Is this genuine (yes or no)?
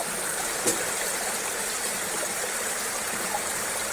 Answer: no